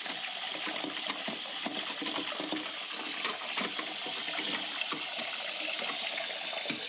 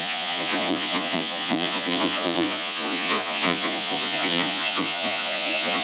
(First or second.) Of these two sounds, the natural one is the first